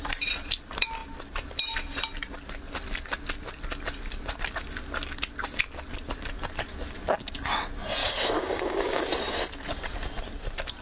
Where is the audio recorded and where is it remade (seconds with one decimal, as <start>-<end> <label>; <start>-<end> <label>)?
0.0-8.0 recorded; 8.0-9.0 remade; 9.0-10.8 recorded